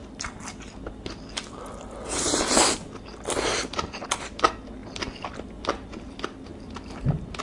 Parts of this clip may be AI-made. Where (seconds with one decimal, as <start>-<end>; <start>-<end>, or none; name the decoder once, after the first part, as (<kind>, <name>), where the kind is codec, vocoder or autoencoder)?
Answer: none